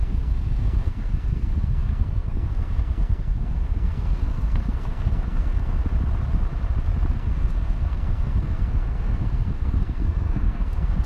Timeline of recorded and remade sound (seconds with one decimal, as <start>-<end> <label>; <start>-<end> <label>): 0.0-5.8 remade; 5.8-7.1 recorded; 7.1-11.1 remade